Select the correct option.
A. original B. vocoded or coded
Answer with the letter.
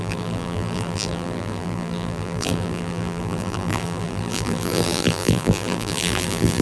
B